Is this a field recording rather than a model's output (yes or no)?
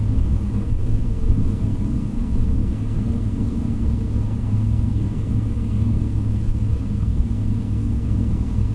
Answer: no